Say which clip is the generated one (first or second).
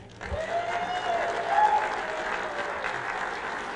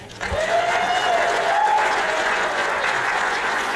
second